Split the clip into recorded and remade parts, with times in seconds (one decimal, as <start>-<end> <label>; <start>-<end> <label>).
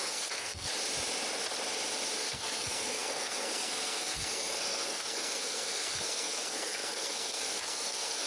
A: 0.0-0.7 remade; 0.7-2.3 recorded; 2.3-8.3 remade